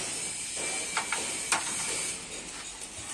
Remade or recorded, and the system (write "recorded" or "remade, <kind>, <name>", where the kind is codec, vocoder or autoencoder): recorded